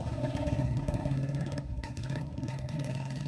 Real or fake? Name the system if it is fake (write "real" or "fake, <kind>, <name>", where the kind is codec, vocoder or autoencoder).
fake, codec, SNAC